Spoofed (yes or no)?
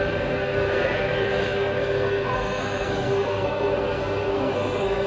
yes